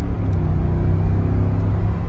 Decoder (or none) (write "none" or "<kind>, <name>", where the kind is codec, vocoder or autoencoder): none